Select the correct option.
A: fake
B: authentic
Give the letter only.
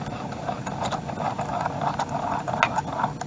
B